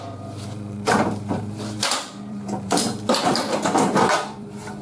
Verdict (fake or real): fake